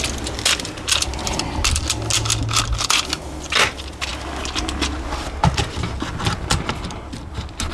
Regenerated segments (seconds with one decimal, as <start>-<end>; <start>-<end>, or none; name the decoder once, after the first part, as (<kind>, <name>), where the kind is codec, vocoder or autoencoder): none